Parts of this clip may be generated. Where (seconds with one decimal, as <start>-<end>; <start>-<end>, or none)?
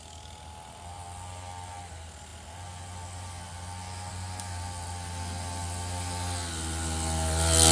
none